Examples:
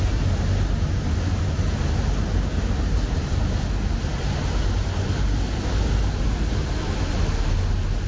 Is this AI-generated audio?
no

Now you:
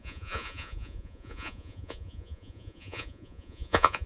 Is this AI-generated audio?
yes